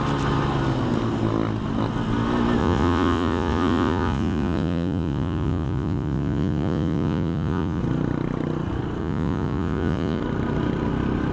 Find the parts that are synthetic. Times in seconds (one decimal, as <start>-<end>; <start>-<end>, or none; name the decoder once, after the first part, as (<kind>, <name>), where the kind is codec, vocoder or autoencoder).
2.6-7.8 (vocoder, Vocos); 9.0-10.2